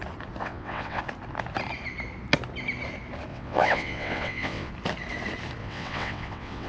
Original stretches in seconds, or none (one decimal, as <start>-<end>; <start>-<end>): 0.0-0.4; 1.0-3.3; 4.7-5.6